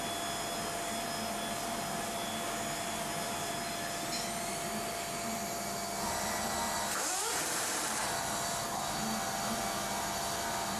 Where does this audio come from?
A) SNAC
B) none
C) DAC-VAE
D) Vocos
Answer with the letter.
B